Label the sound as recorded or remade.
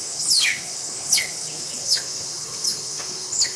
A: remade